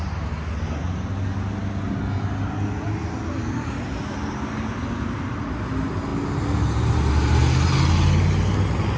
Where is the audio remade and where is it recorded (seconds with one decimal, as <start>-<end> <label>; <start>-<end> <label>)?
0.0-9.0 recorded